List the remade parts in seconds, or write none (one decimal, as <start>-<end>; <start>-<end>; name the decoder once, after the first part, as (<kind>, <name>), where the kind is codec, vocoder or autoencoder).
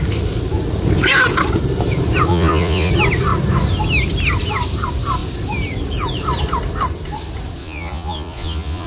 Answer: 2.3-2.9 (vocoder, Vocos); 7.6-8.9